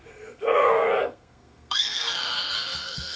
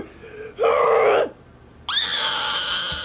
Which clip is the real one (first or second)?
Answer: second